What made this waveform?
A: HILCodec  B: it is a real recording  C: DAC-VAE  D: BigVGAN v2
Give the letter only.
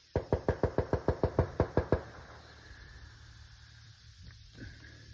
B